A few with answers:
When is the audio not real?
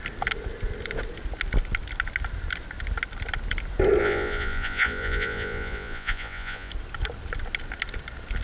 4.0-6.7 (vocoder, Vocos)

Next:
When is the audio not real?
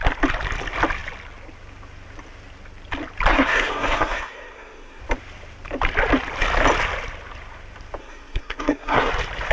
3.3-5.0 (codec, SNAC); 8.0-9.1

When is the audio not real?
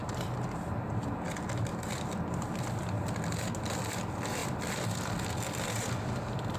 0.0-0.9 (vocoder, BigVGAN v2)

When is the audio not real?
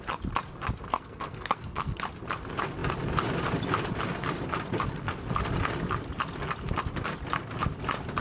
0.9-2.0 (codec, SNAC)